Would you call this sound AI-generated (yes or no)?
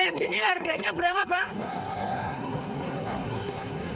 yes